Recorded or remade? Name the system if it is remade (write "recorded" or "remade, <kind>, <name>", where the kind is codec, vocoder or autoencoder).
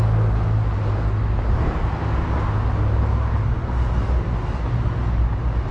recorded